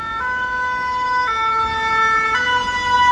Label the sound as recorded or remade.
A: recorded